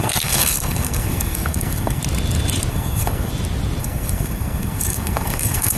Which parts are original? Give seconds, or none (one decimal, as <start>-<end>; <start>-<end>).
2.0-2.7; 3.3-3.8